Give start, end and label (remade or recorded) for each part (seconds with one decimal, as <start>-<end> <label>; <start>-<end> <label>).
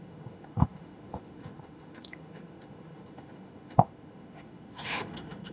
0.0-5.5 remade